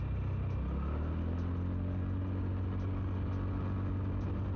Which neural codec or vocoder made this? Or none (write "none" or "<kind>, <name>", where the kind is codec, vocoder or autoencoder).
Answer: none